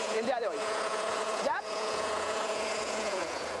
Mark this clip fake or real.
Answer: fake